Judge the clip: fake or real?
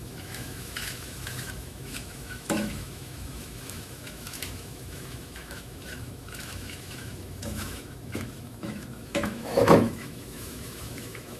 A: fake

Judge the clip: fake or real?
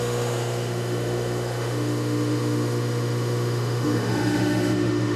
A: fake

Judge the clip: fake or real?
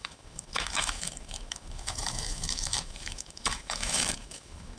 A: fake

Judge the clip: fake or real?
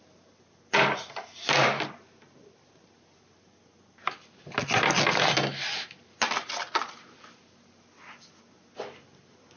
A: real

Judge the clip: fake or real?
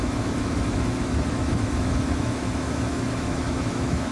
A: fake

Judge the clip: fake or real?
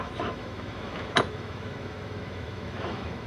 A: fake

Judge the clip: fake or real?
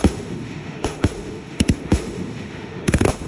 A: fake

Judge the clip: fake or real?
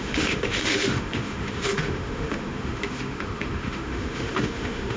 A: fake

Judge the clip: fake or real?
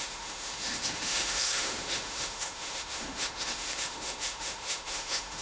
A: fake